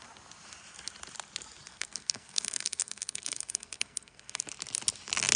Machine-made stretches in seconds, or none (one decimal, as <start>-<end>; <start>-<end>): 1.7-4.4